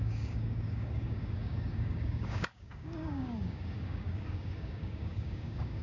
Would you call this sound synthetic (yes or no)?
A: yes